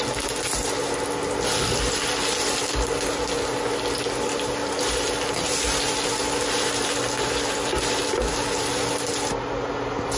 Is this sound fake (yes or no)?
no